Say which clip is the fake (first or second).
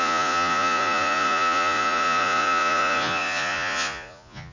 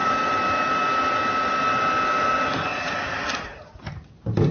first